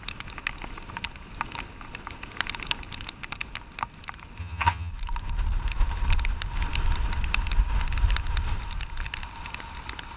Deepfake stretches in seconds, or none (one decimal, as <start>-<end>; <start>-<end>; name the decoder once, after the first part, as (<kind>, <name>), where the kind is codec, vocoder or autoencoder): 4.4-4.9 (vocoder, HiFi-GAN)